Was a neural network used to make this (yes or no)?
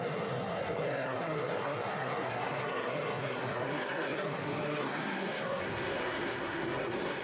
yes